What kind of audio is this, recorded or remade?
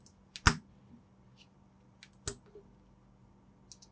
recorded